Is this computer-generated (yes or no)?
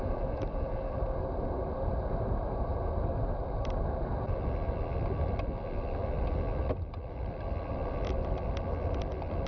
no